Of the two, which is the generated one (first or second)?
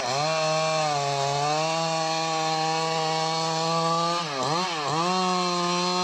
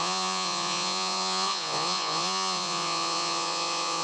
second